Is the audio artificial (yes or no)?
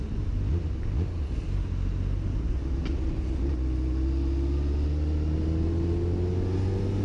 no